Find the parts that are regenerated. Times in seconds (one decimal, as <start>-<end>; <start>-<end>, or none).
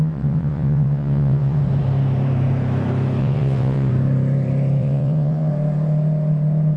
0.0-1.6; 3.2-3.9; 4.8-5.5